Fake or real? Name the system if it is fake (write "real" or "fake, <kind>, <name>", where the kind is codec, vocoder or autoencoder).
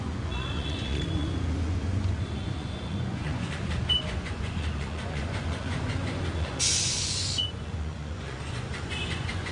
fake, vocoder, Vocos